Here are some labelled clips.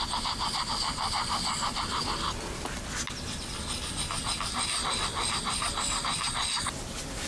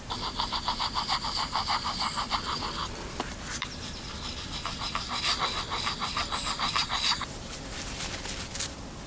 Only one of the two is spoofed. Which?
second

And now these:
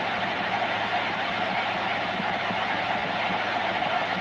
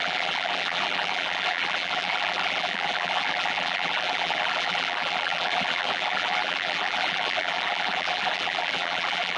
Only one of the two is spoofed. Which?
second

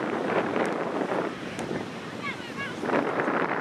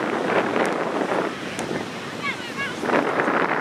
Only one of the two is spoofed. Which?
first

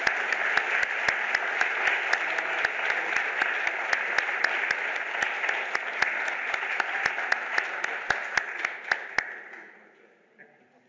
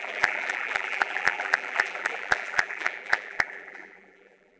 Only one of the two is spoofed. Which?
second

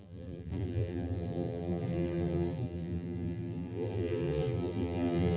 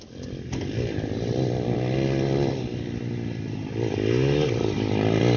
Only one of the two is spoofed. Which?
first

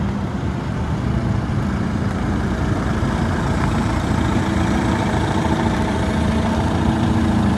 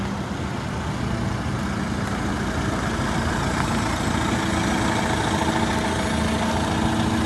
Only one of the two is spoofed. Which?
first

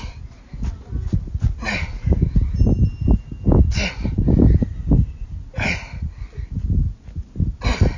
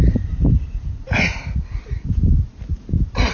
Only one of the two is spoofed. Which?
second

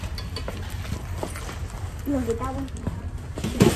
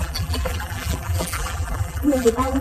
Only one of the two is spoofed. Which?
second